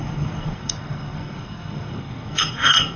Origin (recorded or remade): remade